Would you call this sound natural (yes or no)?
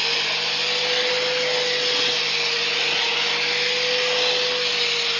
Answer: yes